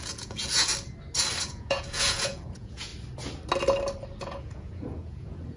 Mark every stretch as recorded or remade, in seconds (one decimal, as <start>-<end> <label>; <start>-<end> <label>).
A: 0.0-0.7 remade; 0.7-1.4 recorded; 1.4-2.9 remade; 2.9-4.2 recorded; 4.2-5.6 remade